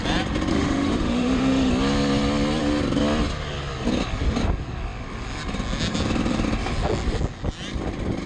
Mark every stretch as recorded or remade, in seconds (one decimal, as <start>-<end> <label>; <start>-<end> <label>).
0.0-0.5 recorded; 0.5-1.7 remade; 1.7-8.3 recorded